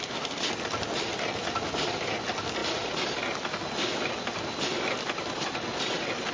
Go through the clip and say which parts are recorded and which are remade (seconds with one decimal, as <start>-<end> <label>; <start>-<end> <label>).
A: 0.0-6.3 recorded